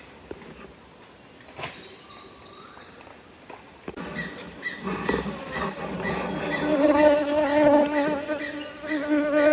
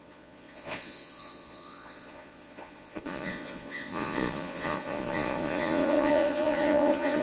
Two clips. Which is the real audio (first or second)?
first